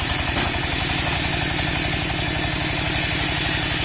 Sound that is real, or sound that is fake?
real